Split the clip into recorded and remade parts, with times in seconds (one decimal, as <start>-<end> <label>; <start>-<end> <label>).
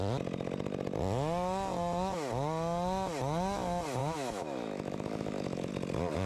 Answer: 0.0-4.0 recorded; 4.0-5.7 remade; 5.7-6.3 recorded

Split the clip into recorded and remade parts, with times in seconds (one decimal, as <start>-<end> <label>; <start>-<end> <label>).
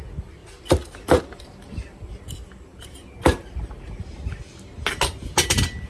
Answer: 0.0-2.7 recorded; 2.7-4.2 remade; 4.2-5.9 recorded